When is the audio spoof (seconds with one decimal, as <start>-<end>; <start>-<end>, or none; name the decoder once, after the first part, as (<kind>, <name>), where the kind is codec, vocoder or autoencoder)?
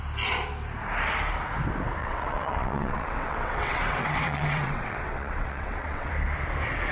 2.0-6.1 (vocoder, WaveNeXt)